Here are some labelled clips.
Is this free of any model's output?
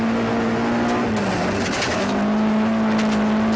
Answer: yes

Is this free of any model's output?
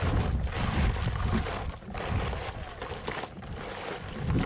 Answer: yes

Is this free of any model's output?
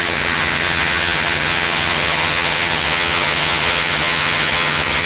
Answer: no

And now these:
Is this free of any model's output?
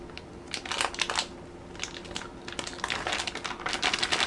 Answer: yes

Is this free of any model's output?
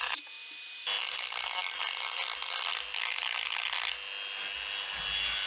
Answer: yes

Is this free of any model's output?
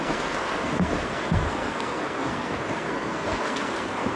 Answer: no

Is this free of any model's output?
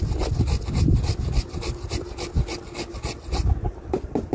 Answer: yes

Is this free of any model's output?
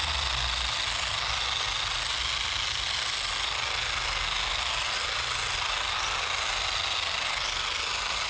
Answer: yes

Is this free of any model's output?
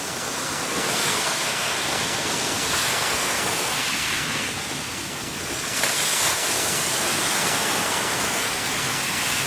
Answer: no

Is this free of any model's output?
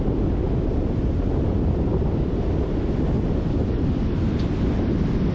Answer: yes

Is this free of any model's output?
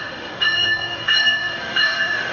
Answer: no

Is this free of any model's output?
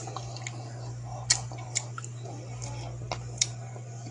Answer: yes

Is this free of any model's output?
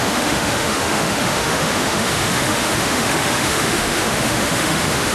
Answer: no